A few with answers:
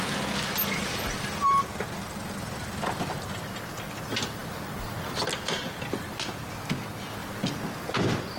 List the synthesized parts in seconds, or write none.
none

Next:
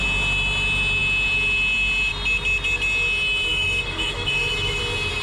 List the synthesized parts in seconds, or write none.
3.5-4.8 (autoencoder, DAC-VAE)

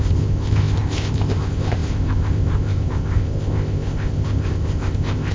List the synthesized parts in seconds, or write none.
0.0-5.3 (codec, ZipCodec)

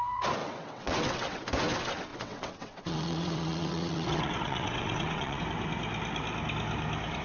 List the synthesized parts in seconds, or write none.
0.4-1.4 (vocoder, WaveNeXt); 2.1-5.4